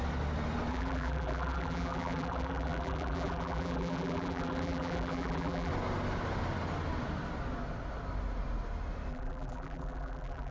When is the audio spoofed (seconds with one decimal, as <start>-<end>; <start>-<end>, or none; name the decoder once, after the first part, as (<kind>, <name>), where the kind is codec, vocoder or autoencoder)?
0.7-5.7 (vocoder, BigVGAN v2); 9.1-10.5